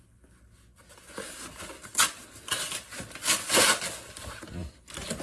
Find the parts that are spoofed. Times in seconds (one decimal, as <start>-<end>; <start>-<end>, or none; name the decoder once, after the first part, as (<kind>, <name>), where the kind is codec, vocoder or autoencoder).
none